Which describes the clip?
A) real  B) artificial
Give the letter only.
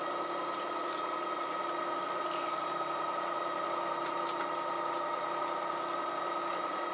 A